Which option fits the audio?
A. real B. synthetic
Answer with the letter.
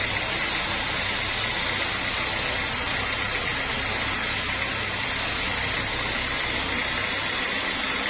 A